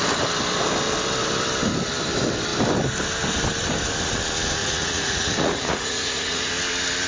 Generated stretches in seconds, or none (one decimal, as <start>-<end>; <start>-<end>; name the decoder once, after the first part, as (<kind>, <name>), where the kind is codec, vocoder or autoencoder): 4.6-6.5 (vocoder, Vocos)